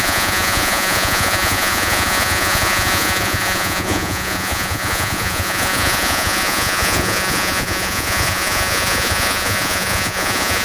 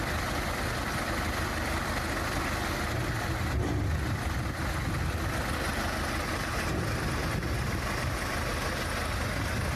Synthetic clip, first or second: first